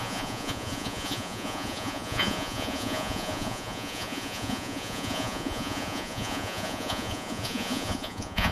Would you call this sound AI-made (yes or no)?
yes